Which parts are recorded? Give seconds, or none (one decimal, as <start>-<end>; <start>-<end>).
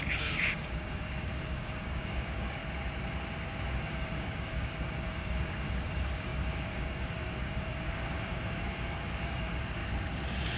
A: 2.6-3.6; 9.8-10.6